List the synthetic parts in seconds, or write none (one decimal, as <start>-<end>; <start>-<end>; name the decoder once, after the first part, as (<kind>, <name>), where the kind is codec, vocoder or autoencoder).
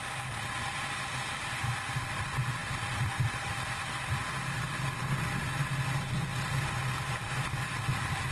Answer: 6.3-8.3 (vocoder, BigVGAN v2)